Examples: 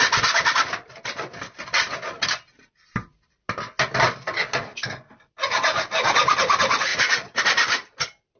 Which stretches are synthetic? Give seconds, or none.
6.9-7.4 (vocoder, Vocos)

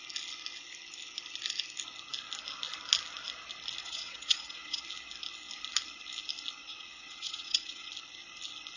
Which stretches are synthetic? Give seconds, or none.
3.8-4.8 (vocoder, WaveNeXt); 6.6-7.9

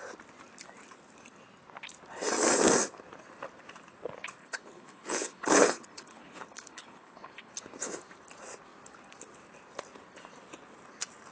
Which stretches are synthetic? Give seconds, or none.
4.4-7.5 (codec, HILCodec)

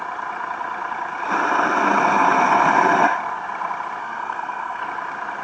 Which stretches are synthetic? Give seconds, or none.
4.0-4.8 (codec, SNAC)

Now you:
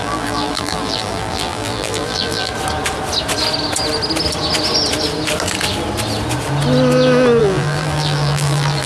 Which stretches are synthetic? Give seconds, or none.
0.0-2.5 (vocoder, BigVGAN v2); 7.4-8.9

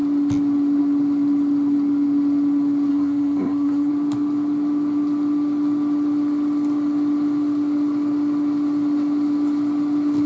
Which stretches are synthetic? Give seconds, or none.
2.9-3.9 (codec, SNAC)

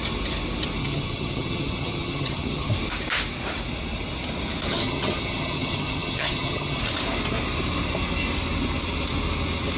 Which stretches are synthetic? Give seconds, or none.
0.8-2.7 (vocoder, HiFi-GAN); 4.7-6.8

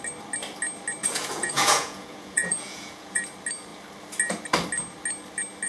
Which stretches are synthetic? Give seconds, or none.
1.0-3.2 (vocoder, Vocos)